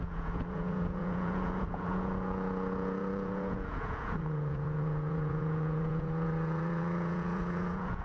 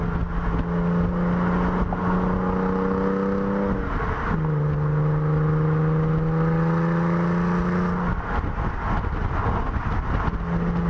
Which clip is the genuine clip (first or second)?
second